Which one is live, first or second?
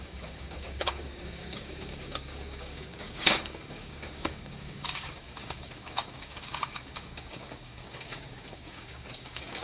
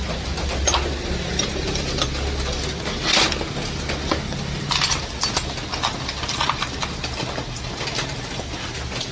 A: second